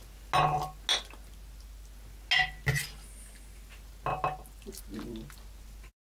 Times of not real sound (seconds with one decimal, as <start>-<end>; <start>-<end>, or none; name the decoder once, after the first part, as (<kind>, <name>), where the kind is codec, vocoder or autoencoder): none